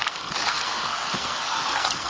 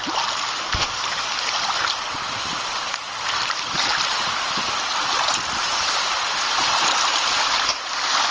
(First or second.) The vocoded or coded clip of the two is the first